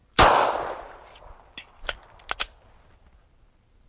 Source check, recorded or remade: recorded